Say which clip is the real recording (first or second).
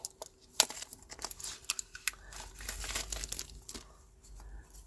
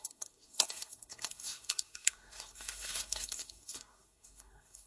first